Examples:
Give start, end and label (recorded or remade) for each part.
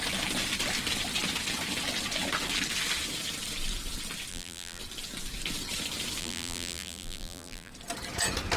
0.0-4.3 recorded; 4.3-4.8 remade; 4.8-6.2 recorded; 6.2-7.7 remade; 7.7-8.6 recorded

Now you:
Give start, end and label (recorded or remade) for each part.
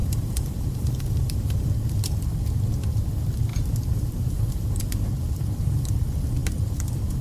0.0-2.2 remade; 2.2-3.5 recorded; 3.5-4.8 remade; 4.8-7.2 recorded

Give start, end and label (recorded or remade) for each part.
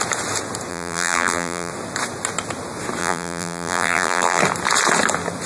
0.0-0.7 recorded; 0.7-1.7 remade; 1.7-3.0 recorded; 3.0-4.4 remade; 4.4-5.5 recorded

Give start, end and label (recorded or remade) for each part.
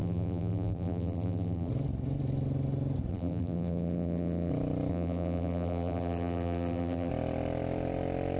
0.0-1.7 remade; 1.7-3.1 recorded; 3.1-4.5 remade; 4.5-4.9 recorded; 4.9-7.1 remade; 7.1-8.4 recorded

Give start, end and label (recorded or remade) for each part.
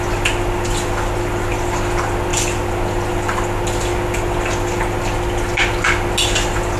0.0-6.8 recorded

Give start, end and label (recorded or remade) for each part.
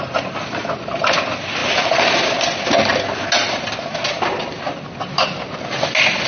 0.0-6.3 recorded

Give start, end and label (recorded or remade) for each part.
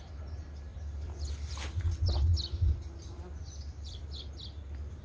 0.0-0.7 recorded; 0.7-1.8 remade; 1.8-2.3 recorded; 2.3-4.2 remade; 4.2-5.0 recorded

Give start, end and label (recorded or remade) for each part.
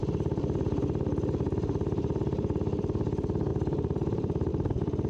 0.0-3.5 recorded; 3.5-4.5 remade; 4.5-5.1 recorded